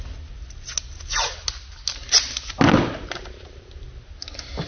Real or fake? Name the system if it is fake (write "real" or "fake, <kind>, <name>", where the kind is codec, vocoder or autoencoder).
real